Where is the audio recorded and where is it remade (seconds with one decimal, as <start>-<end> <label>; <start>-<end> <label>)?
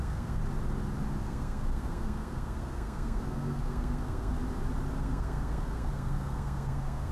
0.0-0.4 remade; 0.4-1.2 recorded; 1.2-4.3 remade; 4.3-5.0 recorded; 5.0-7.1 remade